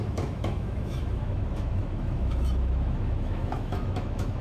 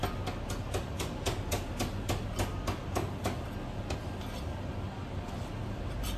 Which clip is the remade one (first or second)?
first